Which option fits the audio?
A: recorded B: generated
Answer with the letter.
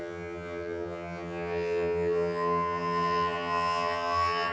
B